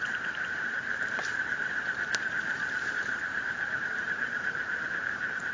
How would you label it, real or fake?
fake